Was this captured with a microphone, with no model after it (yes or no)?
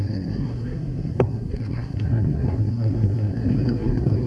no